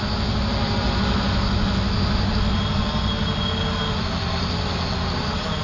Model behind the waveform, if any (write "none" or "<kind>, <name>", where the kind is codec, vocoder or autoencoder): none